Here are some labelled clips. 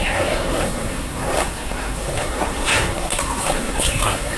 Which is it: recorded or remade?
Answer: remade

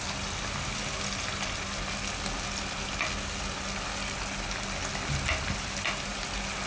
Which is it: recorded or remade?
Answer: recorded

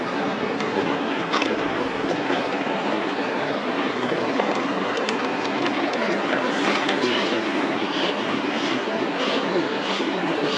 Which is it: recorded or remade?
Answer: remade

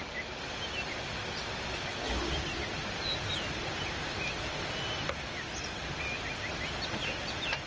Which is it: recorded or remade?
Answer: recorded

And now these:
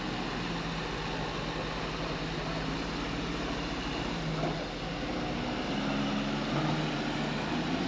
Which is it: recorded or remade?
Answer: recorded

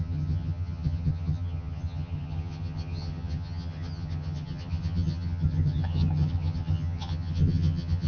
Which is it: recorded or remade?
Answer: remade